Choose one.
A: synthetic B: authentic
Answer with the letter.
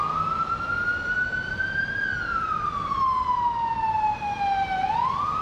B